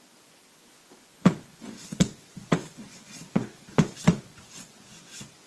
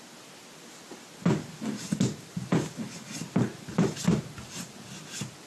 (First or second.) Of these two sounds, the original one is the second